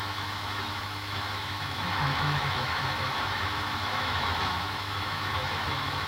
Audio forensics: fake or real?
fake